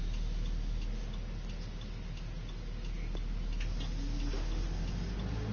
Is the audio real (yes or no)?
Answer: yes